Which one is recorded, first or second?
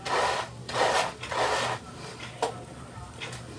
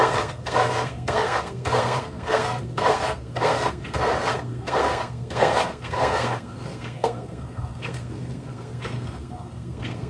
first